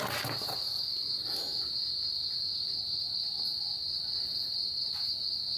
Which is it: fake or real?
real